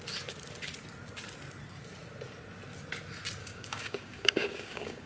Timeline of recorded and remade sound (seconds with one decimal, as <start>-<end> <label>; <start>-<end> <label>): 0.0-3.4 recorded; 3.4-5.1 remade